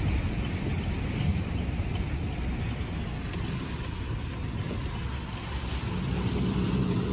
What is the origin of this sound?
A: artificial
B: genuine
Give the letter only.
B